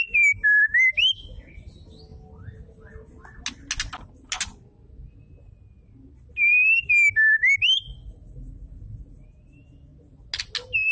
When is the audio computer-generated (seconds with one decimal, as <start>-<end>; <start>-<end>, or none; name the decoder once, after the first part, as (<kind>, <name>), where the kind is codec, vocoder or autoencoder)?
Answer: none